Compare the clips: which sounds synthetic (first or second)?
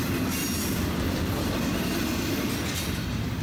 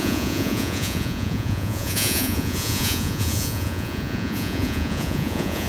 second